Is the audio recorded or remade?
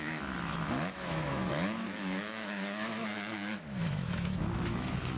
remade